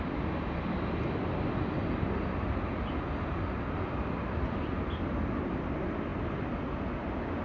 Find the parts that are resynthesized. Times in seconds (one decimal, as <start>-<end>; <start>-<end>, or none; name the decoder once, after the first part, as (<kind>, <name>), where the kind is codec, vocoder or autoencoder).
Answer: none